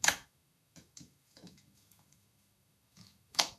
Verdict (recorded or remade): remade